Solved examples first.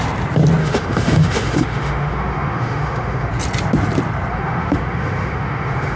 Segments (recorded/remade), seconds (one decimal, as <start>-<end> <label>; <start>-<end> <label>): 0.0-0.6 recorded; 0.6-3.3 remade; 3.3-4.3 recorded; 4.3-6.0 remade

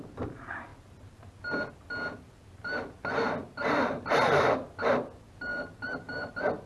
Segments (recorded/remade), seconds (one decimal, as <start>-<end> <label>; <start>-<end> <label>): 0.0-6.7 recorded

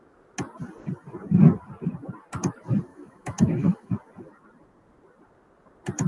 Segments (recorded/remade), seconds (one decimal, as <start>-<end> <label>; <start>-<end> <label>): 0.0-2.9 recorded; 2.9-3.9 remade; 3.9-6.1 recorded

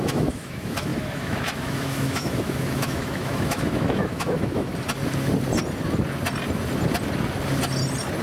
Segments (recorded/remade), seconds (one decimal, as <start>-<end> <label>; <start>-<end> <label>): 0.0-4.7 remade; 4.7-8.2 recorded

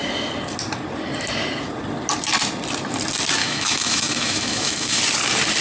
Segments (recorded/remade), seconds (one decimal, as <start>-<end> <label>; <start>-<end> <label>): 0.0-3.4 recorded; 3.4-5.0 remade; 5.0-5.6 recorded

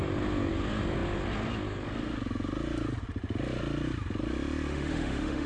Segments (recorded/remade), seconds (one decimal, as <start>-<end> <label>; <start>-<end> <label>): 0.0-4.7 recorded; 4.7-5.5 remade

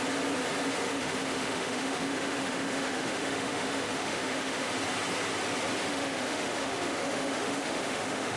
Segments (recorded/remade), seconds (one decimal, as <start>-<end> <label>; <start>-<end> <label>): 0.0-0.9 recorded; 0.9-4.7 remade; 4.7-5.9 recorded; 5.9-8.4 remade

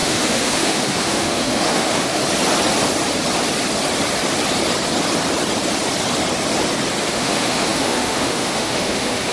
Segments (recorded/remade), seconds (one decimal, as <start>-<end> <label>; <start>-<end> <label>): 0.0-2.2 remade; 2.2-7.0 recorded; 7.0-9.3 remade